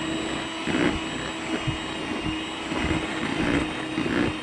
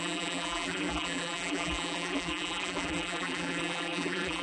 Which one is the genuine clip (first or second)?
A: first